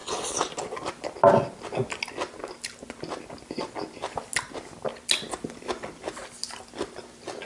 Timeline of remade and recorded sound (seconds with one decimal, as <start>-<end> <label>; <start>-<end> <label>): 0.0-0.9 remade; 0.9-7.5 recorded